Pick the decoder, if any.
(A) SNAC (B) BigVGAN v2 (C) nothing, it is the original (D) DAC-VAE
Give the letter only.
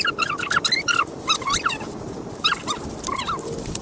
C